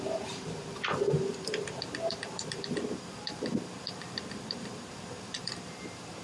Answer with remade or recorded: remade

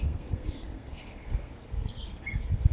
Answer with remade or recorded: remade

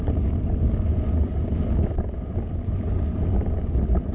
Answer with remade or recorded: recorded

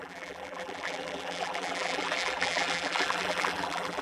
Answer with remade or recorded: remade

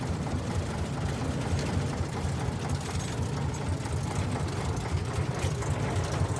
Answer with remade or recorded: recorded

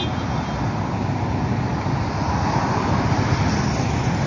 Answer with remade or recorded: recorded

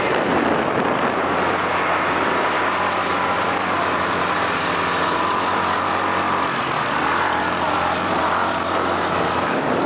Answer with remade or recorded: remade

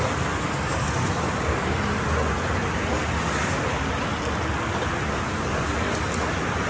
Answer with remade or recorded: recorded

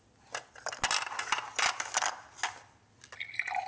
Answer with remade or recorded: recorded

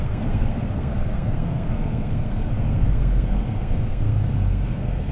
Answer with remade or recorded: remade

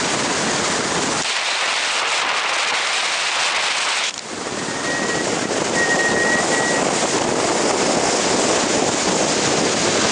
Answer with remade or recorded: recorded